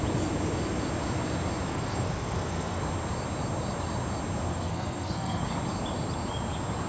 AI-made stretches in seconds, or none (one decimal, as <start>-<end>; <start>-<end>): 1.7-2.8; 4.5-5.4